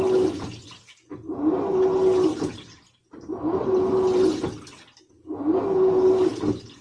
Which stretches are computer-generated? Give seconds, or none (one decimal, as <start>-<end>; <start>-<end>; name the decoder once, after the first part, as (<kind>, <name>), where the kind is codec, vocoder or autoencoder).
none